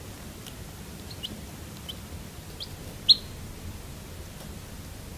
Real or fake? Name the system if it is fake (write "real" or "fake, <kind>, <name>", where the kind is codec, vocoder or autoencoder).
real